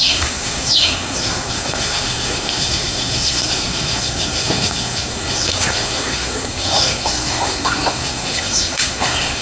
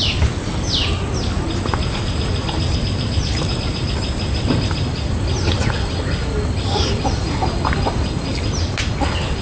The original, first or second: second